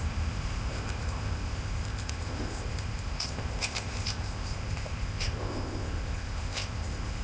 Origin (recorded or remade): remade